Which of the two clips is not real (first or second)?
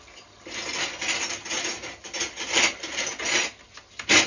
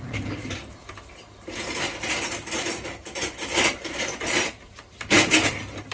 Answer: second